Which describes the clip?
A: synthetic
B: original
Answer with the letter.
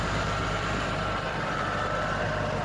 A